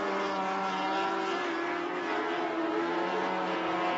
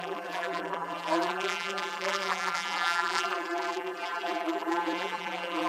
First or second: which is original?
first